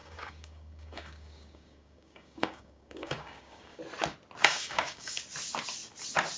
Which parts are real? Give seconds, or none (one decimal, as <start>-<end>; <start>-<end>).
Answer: 3.8-4.4; 5.2-6.4